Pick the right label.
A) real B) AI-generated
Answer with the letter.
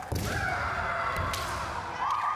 A